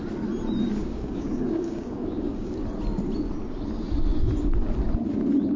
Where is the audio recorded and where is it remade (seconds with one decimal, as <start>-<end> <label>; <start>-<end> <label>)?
0.0-0.8 recorded; 0.8-2.6 remade; 2.6-5.6 recorded